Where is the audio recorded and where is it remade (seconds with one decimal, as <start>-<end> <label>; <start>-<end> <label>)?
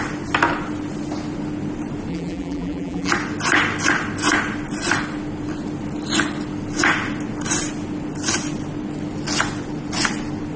0.0-2.1 recorded; 2.1-3.1 remade; 3.1-10.6 recorded